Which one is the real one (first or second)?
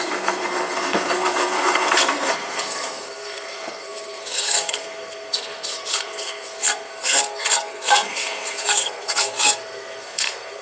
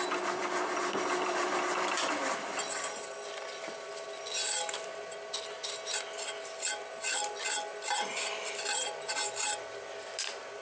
second